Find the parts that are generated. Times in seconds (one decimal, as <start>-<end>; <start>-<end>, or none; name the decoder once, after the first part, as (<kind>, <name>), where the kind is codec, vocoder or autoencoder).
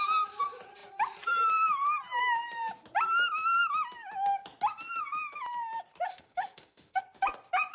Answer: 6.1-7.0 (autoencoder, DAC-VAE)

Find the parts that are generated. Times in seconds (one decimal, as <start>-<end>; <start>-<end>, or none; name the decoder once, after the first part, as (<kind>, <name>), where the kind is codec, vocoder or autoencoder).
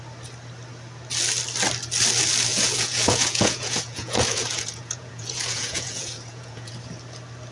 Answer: 2.5-6.7 (vocoder, Vocos)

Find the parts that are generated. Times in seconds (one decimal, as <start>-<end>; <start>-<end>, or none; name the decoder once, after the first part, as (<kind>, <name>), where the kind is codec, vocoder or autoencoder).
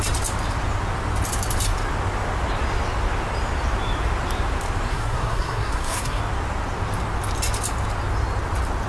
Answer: 4.9-6.2 (codec, SNAC)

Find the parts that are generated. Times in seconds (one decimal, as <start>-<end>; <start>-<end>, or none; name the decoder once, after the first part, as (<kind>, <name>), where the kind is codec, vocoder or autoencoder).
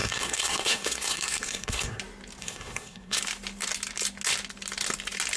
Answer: 0.0-2.0 (codec, SNAC); 2.4-3.2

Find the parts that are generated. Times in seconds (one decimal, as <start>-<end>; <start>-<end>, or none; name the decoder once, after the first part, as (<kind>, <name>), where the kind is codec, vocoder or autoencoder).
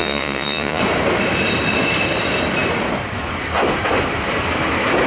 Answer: 0.0-0.8 (vocoder, Vocos)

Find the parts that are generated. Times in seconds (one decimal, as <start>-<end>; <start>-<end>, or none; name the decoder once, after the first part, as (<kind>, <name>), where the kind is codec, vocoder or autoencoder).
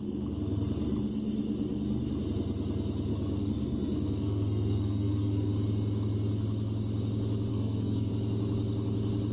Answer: 3.1-5.5 (codec, SNAC); 7.5-8.1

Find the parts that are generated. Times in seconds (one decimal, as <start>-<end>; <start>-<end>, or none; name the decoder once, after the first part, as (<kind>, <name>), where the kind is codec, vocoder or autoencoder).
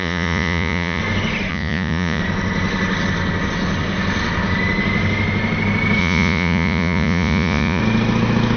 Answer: 0.0-1.0 (vocoder, Vocos); 1.5-2.2; 6.0-7.8